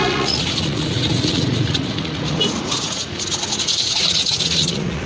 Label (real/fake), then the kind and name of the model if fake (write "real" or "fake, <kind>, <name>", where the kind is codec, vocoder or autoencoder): fake, vocoder, Vocos